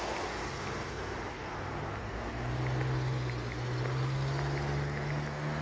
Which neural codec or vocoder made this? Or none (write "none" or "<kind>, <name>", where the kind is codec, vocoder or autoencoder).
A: none